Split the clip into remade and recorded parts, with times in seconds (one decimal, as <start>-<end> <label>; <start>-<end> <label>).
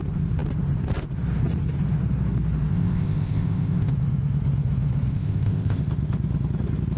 0.0-2.7 recorded; 2.7-3.9 remade; 3.9-5.1 recorded; 5.1-5.8 remade; 5.8-7.0 recorded